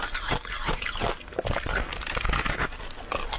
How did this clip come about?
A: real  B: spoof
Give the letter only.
A